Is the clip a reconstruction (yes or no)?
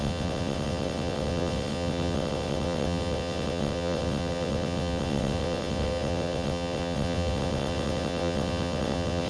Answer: yes